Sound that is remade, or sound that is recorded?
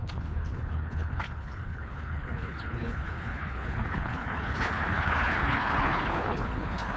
remade